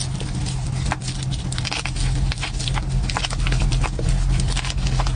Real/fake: real